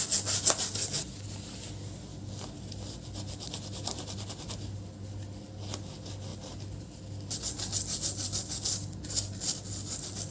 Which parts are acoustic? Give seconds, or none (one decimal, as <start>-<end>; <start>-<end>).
0.0-10.3